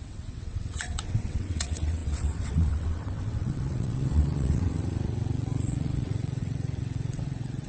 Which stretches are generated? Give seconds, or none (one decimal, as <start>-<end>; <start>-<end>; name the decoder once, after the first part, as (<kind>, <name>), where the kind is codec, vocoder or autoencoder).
0.0-7.7 (vocoder, WaveNeXt)

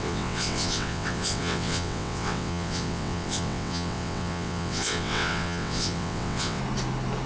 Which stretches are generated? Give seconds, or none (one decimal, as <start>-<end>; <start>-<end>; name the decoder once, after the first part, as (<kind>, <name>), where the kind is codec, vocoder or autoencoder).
0.0-6.6 (vocoder, WaveNeXt)

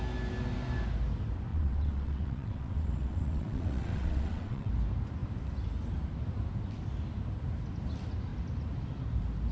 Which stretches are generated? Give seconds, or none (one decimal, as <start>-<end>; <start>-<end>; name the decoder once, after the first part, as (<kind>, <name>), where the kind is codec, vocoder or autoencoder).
1.5-4.7 (vocoder, WaveNeXt)

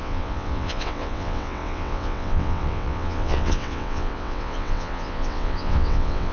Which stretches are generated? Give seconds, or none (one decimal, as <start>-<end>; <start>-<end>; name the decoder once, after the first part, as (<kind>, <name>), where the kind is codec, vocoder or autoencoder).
0.0-6.3 (vocoder, WaveNeXt)

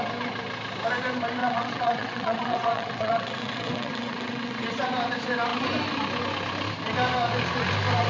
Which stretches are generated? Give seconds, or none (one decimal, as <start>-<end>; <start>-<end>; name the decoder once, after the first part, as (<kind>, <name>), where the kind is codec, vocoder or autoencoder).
1.4-4.6 (vocoder, WaveNeXt)

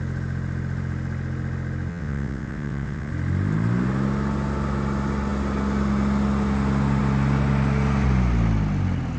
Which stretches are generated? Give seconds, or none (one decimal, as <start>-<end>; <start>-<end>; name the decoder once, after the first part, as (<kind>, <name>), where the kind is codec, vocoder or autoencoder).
1.9-3.1 (vocoder, WaveNeXt)

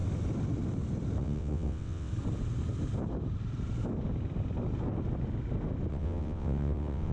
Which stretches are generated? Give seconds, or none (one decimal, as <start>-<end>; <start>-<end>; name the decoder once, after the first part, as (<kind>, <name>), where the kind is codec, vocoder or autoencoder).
1.2-2.1 (vocoder, WaveNeXt); 5.9-7.1